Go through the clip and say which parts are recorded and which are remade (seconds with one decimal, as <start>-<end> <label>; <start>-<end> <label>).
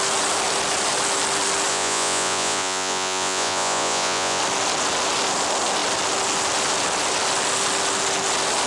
0.0-1.7 recorded; 1.7-4.4 remade; 4.4-8.7 recorded